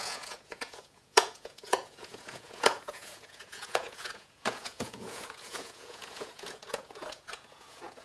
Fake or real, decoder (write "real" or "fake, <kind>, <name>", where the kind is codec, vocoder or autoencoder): fake, vocoder, Vocos